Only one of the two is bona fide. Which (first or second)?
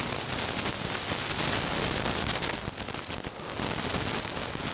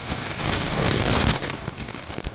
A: first